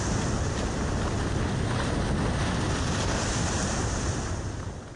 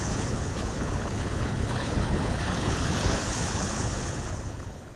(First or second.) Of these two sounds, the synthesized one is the second